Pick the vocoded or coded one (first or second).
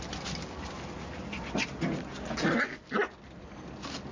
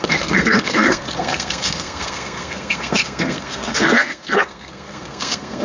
second